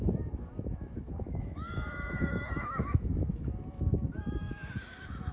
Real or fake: fake